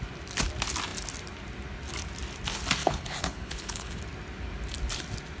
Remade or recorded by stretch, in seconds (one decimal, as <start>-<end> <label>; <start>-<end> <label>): 0.0-2.8 recorded; 2.8-4.0 remade; 4.0-5.4 recorded